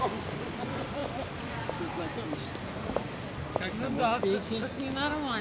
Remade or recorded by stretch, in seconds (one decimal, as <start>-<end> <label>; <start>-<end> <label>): 0.0-5.4 recorded